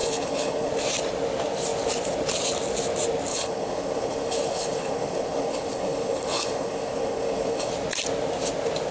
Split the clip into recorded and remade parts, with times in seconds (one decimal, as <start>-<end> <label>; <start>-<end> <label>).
0.0-0.7 remade; 0.7-3.3 recorded; 3.3-7.7 remade; 7.7-8.9 recorded